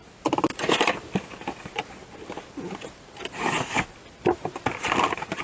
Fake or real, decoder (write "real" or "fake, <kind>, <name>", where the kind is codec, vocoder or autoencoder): real